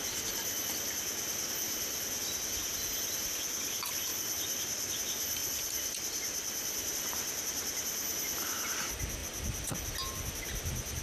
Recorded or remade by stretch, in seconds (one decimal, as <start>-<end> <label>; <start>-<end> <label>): 0.0-11.0 recorded